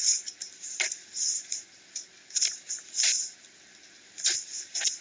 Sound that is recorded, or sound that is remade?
recorded